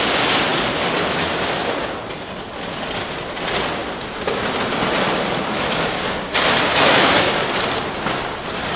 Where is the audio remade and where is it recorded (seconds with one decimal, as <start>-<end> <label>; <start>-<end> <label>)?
0.0-5.5 recorded; 5.5-6.0 remade; 6.0-6.7 recorded; 6.7-7.3 remade; 7.3-8.8 recorded